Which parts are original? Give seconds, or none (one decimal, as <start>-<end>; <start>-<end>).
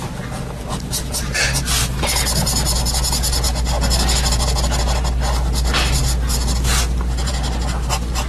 0.0-8.3